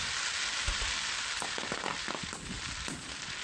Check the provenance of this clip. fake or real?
fake